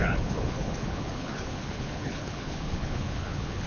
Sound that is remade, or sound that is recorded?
remade